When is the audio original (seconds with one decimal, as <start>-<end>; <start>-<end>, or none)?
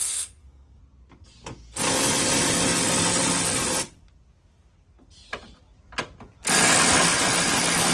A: 0.8-7.9